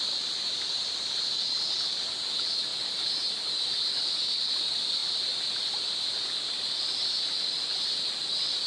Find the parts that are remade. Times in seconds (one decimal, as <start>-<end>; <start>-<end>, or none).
none

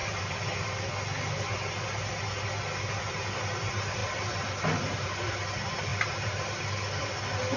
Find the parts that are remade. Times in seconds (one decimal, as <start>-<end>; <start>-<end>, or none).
0.0-0.9; 4.0-5.3; 5.9-6.6

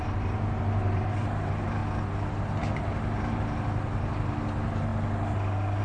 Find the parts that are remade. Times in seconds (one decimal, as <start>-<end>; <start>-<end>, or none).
0.0-1.8; 2.6-4.9

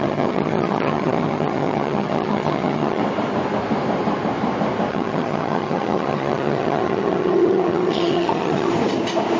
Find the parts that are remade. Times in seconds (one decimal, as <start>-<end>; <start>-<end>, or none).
0.0-3.0; 4.9-8.7

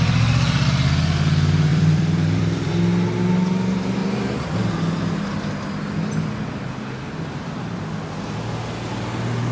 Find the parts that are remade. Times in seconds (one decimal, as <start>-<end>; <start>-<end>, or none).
1.7-2.7

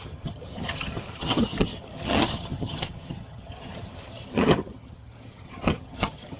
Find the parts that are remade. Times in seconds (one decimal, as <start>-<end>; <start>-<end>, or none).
0.0-6.4

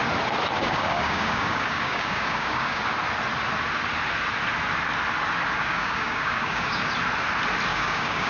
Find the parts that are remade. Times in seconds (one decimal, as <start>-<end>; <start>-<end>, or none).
0.6-2.8; 5.6-6.9; 7.7-8.3